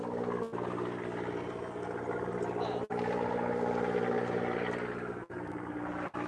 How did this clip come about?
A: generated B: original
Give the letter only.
B